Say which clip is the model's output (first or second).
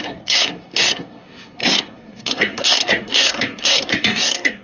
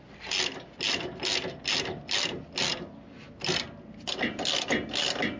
first